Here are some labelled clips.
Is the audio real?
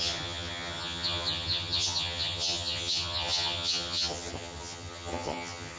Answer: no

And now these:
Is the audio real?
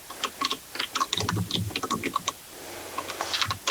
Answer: no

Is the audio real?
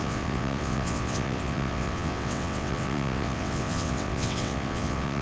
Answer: no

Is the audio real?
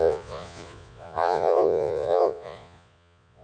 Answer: no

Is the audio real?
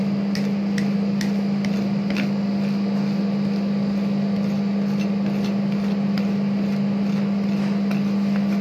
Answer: yes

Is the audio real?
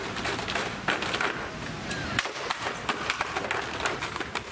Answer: yes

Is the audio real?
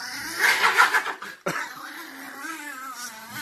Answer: yes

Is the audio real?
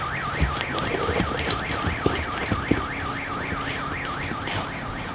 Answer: yes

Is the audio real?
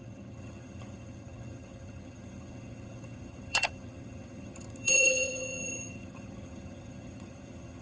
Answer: no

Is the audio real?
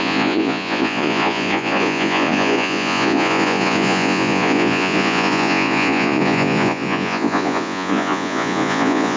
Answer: no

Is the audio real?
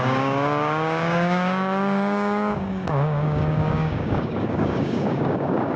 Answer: no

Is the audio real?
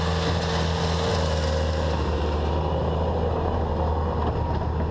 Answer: yes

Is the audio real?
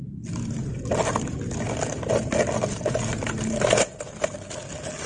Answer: yes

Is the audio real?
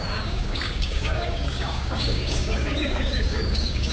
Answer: no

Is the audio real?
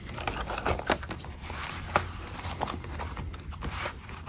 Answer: yes